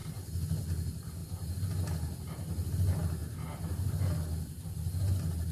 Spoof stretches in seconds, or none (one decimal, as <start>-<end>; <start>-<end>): none